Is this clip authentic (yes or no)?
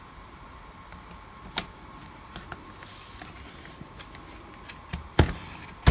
yes